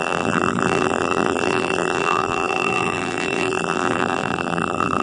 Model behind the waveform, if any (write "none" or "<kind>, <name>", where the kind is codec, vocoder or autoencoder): vocoder, BigVGAN v2